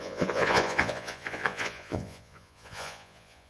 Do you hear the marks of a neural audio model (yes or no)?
yes